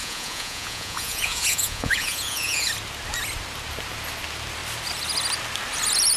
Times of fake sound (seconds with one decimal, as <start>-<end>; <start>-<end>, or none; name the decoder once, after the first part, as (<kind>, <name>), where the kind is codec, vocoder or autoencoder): 0.0-2.7 (vocoder, Vocos)